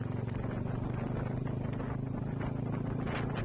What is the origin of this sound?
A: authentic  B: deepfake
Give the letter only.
A